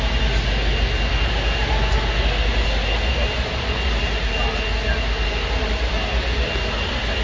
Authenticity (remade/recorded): recorded